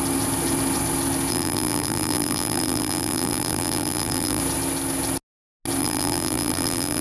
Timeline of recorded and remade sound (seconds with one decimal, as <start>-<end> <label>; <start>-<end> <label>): 0.0-1.3 recorded; 1.3-4.4 remade; 4.4-5.8 recorded; 5.8-7.0 remade